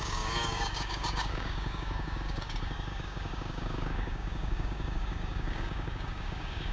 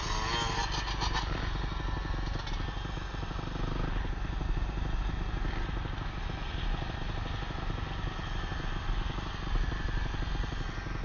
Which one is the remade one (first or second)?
first